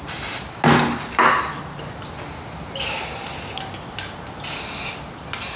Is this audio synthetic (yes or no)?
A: no